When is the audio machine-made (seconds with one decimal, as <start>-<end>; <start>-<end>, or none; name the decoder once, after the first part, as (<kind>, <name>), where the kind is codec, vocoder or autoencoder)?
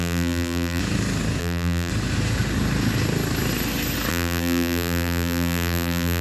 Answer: 0.0-0.8 (vocoder, BigVGAN v2); 1.4-1.9; 4.1-6.2